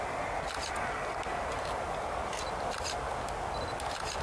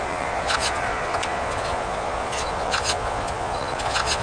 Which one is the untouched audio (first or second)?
first